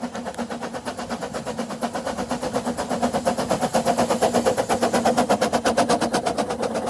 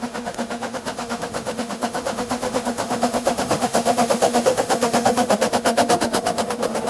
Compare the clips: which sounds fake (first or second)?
second